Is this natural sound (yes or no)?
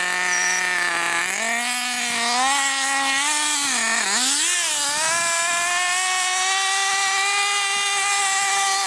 yes